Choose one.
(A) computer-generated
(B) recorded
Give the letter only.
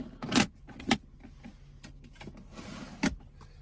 B